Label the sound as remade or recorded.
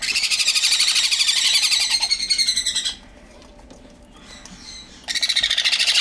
recorded